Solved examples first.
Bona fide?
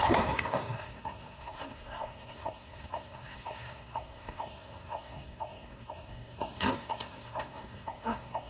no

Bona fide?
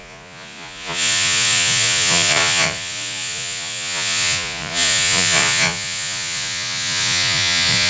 no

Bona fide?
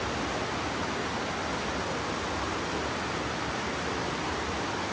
yes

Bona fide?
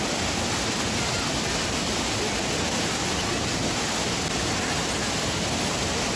yes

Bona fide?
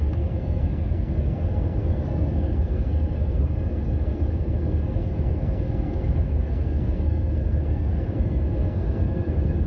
no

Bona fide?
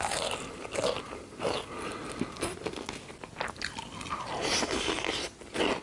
yes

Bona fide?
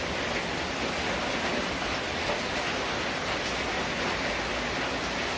yes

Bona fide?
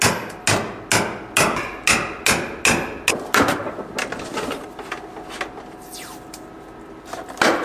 yes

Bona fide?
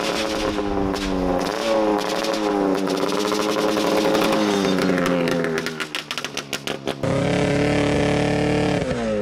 yes